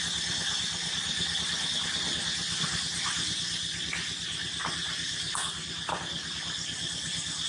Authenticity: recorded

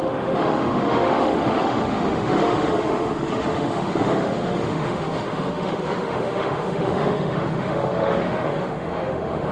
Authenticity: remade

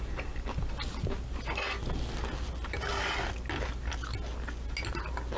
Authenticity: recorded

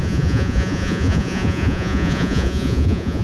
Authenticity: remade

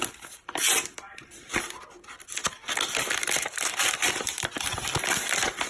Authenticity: recorded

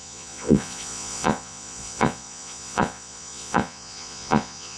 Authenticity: remade